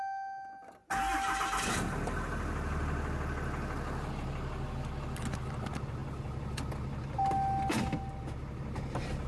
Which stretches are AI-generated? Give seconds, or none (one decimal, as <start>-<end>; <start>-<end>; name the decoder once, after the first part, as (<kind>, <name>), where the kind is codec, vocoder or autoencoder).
none